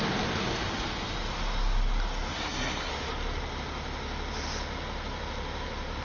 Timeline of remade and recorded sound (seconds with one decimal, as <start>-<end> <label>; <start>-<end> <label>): 0.0-2.3 recorded; 2.3-2.9 remade; 2.9-6.0 recorded